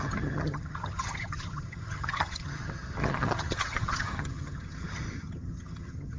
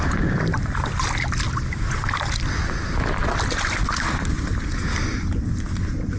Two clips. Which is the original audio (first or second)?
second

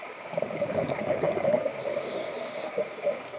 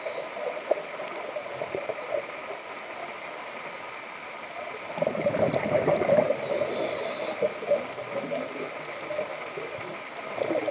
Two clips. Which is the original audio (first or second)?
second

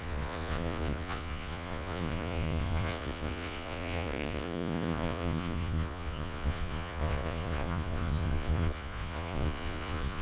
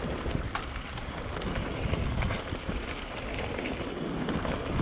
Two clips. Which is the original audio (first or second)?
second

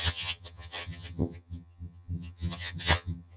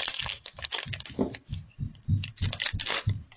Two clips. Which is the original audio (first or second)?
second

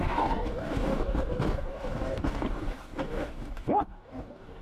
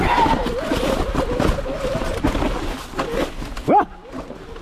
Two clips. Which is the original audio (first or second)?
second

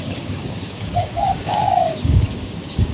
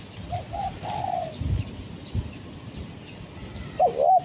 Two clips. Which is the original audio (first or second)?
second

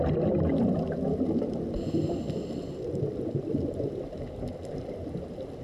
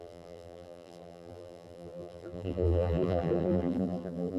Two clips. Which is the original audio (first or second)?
first